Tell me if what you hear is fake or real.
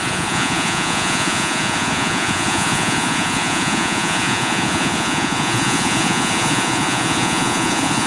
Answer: fake